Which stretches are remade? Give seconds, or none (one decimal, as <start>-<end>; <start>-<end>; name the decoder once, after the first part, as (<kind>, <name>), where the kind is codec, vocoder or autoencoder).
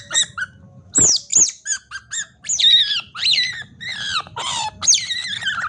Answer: none